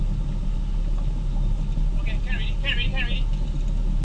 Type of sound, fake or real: real